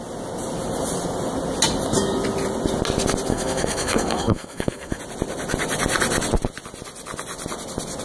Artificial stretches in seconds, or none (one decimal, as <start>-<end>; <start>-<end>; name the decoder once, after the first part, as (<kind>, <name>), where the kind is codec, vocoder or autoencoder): 3.3-5.0 (codec, SNAC)